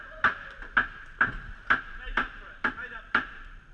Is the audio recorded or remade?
recorded